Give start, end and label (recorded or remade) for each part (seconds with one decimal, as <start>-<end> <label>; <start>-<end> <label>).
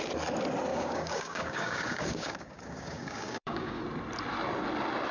0.0-0.7 recorded; 0.7-3.8 remade; 3.8-5.1 recorded